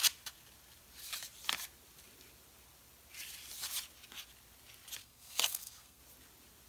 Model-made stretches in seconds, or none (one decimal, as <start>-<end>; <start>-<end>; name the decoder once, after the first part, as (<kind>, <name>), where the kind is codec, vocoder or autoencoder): 5.0-6.0 (codec, SNAC)